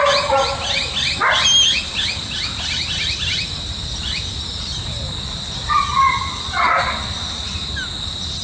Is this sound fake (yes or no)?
no